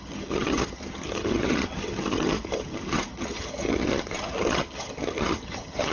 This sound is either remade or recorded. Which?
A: remade